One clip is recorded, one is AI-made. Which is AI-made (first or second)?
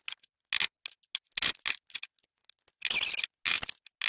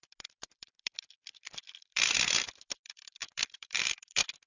second